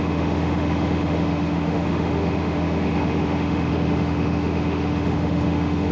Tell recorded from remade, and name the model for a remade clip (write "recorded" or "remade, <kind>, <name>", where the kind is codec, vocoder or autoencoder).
remade, autoencoder, DAC-VAE